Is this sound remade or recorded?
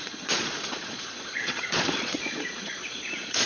remade